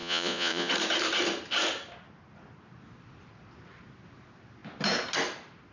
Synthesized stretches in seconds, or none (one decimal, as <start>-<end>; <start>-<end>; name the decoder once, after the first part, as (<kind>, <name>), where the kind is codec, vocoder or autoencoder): 0.0-0.7 (vocoder, Vocos)